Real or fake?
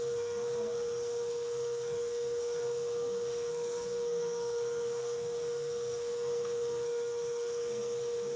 fake